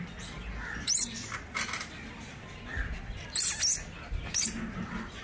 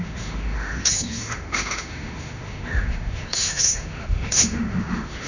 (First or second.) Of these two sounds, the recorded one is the first